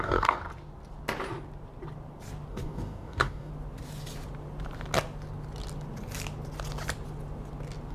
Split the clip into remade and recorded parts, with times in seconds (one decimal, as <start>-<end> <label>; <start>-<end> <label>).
0.0-0.4 remade; 0.4-2.5 recorded; 2.5-3.5 remade; 3.5-7.9 recorded